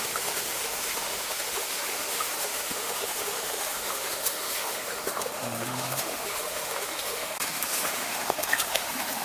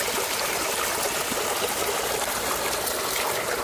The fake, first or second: first